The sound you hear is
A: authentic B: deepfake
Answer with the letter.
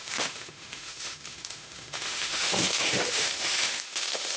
B